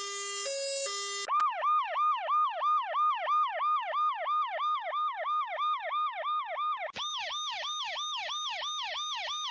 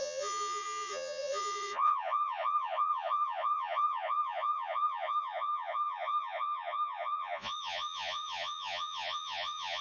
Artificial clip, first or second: second